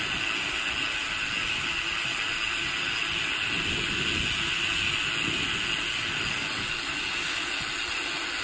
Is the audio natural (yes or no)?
yes